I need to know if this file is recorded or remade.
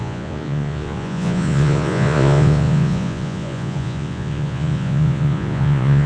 remade